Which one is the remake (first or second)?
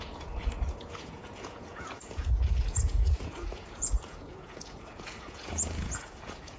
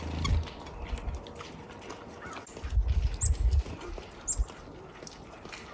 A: first